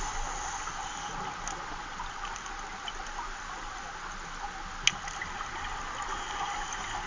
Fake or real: real